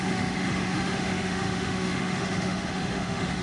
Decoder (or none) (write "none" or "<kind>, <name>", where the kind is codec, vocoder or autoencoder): autoencoder, DAC-VAE